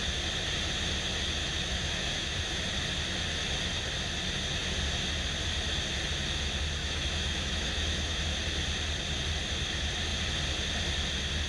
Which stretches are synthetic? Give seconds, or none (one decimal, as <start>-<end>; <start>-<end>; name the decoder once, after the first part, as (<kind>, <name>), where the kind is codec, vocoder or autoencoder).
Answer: 1.4-2.6 (autoencoder, DAC-VAE); 6.8-8.2